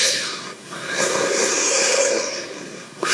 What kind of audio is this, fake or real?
fake